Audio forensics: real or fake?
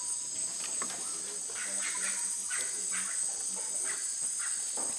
real